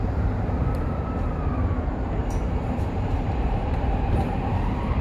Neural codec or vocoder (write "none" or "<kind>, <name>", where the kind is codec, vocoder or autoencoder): vocoder, BigVGAN v2